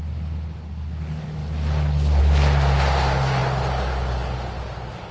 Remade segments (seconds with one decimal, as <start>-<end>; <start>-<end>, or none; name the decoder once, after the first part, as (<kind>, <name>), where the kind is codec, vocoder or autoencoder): none